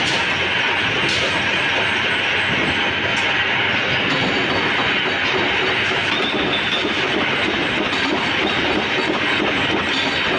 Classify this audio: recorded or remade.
recorded